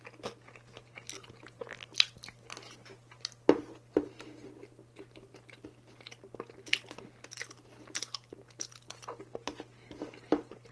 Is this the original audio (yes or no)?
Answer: yes